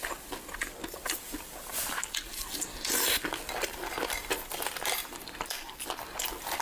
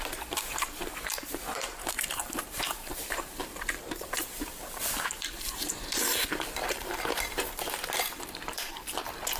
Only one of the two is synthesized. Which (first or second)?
second